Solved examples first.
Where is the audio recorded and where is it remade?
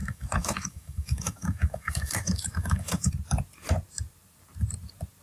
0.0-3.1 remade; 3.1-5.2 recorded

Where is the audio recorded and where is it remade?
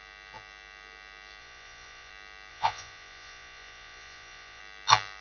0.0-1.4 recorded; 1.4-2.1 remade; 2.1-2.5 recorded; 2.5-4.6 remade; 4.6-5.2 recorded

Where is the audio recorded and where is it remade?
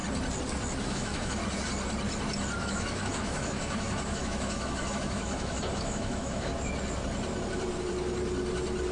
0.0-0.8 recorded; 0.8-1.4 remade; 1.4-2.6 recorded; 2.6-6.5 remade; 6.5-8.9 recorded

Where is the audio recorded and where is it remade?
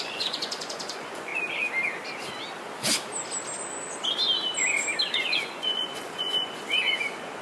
0.0-1.3 remade; 1.3-5.1 recorded; 5.1-7.4 remade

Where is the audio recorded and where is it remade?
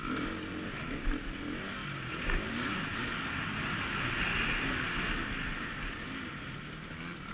0.0-7.3 recorded